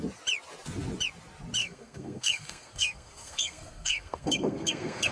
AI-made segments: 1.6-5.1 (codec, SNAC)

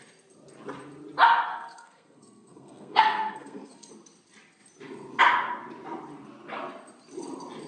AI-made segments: 1.5-3.9 (codec, SNAC)

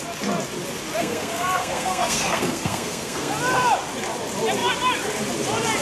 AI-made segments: 1.0-3.3 (codec, SNAC)

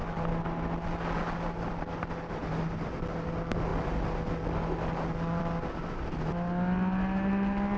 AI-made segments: none

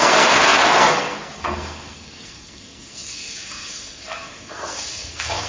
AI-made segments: 0.0-5.5 (codec, SNAC)

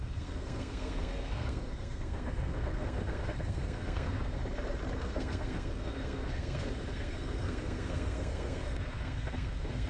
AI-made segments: 0.0-4.4 (codec, SNAC); 5.0-9.9

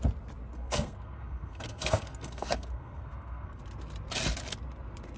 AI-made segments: 0.5-3.6 (codec, SNAC)

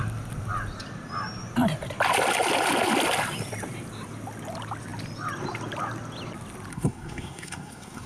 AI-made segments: 6.7-8.1 (codec, SNAC)